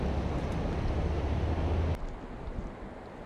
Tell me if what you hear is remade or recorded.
recorded